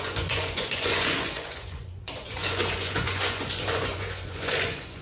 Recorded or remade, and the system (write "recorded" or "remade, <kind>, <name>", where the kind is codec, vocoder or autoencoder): remade, vocoder, Vocos